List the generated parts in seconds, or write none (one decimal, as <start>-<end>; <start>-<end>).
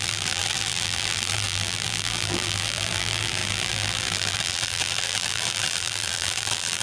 0.0-6.8